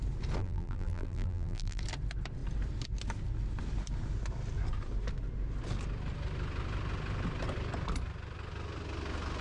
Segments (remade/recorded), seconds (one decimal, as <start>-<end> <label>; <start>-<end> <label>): 0.0-0.4 recorded; 0.4-1.8 remade; 1.8-9.4 recorded